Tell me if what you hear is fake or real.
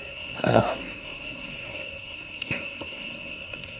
fake